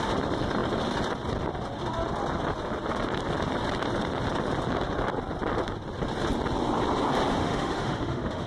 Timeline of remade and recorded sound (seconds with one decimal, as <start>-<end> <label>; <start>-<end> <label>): 0.0-7.4 recorded; 7.4-8.5 remade

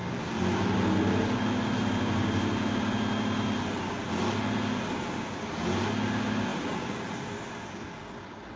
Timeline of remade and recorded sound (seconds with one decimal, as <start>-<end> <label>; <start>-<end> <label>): 0.0-8.6 recorded

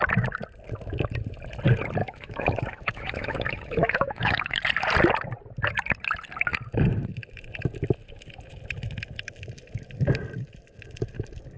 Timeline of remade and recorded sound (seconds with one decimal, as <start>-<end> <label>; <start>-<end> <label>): 0.0-2.0 recorded; 2.0-4.6 remade; 4.6-11.6 recorded

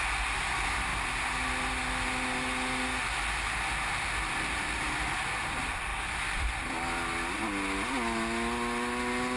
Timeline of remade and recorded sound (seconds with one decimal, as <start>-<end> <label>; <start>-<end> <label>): 0.0-9.4 recorded